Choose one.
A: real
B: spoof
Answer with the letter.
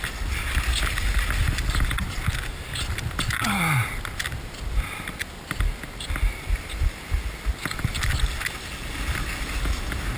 A